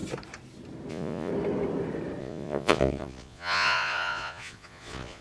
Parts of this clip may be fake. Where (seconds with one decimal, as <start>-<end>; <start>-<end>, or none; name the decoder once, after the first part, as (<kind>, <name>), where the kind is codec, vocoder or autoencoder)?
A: 0.9-1.3 (vocoder, Vocos); 2.2-5.2